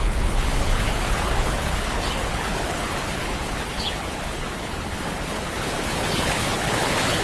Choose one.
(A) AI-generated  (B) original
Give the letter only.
A